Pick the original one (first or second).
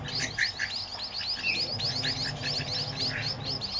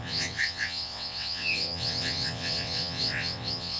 first